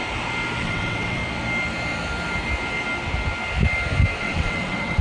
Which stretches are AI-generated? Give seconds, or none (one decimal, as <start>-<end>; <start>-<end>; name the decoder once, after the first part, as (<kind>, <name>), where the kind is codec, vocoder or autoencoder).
0.6-1.2 (vocoder, WaveNeXt); 4.2-5.0